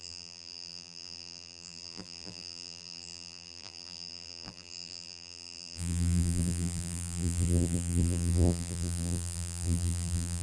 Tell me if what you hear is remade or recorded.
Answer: remade